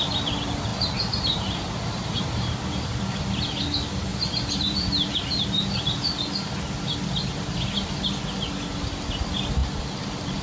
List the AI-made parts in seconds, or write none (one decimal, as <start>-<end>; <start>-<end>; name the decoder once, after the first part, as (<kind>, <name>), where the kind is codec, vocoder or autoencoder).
0.7-3.0 (vocoder, BigVGAN v2); 4.1-6.3; 9.6-10.4